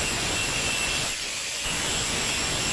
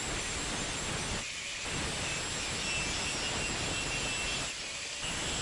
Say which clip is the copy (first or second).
first